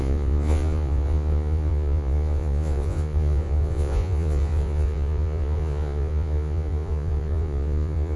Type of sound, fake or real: fake